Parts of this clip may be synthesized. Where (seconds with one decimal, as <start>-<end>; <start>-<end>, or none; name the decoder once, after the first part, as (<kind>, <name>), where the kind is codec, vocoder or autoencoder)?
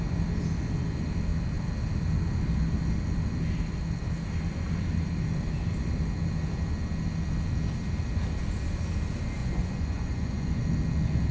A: 9.4-10.6 (vocoder, Vocos)